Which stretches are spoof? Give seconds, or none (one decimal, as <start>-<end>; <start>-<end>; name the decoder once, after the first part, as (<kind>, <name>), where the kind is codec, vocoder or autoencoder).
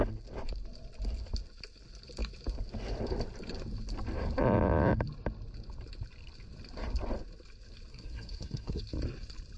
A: 7.9-8.8 (codec, SNAC)